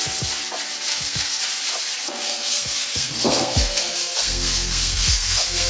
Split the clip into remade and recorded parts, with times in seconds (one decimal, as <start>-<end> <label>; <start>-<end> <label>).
0.0-0.9 recorded; 0.9-1.4 remade; 1.4-2.0 recorded; 2.0-5.7 remade